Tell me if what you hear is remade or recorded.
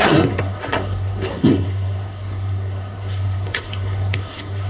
remade